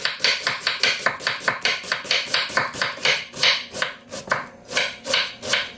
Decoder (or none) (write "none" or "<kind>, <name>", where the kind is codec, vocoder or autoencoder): none